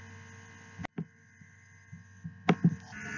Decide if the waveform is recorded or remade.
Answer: recorded